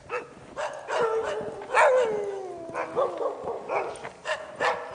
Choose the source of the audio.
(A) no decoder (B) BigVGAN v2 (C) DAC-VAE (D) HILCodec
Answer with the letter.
A